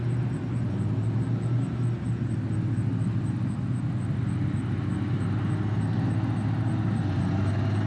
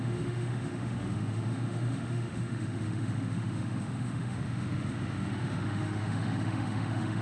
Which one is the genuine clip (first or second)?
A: first